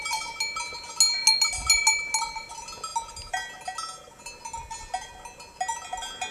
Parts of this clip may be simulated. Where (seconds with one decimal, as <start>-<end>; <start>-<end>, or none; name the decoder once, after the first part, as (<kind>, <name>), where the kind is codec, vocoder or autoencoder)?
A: none